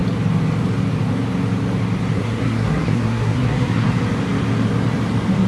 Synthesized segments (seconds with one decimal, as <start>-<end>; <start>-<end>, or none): 2.1-3.9